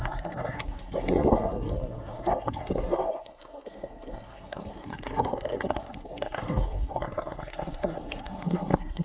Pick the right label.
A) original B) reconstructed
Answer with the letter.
B